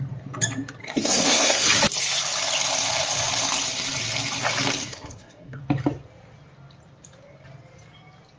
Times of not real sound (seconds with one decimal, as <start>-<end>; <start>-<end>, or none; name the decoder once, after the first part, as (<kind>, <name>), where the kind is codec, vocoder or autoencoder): 0.8-1.7 (codec, SNAC); 4.8-5.6